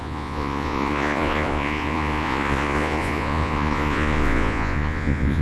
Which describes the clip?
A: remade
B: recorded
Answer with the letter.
A